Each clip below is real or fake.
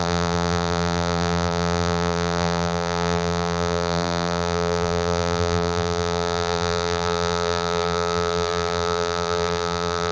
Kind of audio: fake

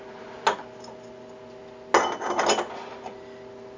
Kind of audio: real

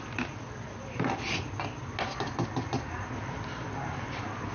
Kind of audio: real